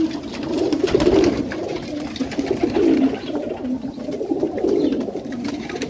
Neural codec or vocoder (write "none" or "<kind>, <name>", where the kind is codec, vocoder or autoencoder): vocoder, BigVGAN v2